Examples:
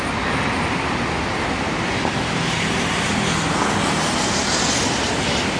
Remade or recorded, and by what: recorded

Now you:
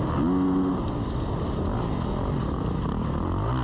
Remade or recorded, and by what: recorded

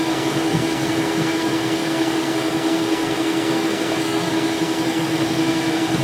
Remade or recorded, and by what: remade, codec, SNAC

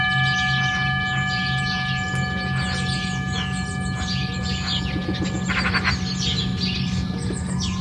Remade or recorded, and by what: recorded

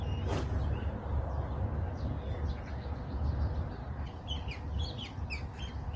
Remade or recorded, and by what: recorded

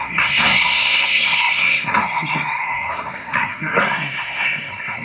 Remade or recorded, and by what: remade, codec, SNAC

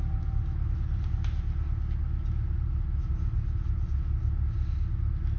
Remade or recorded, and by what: recorded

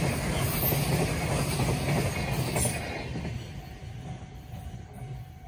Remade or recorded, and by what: recorded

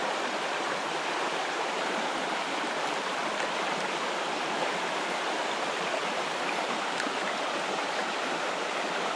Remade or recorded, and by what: remade, vocoder, BigVGAN v2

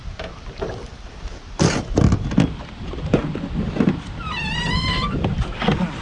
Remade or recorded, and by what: recorded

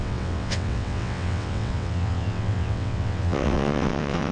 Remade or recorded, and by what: remade, vocoder, WaveNeXt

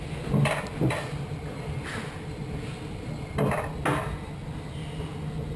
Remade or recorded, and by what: recorded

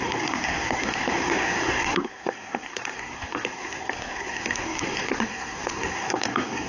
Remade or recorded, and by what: remade, codec, SNAC